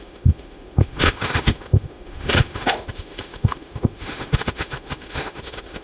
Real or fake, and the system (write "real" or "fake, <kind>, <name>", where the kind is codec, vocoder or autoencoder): fake, autoencoder, DAC-VAE